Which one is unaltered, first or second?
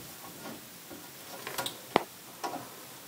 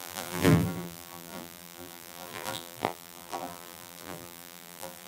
first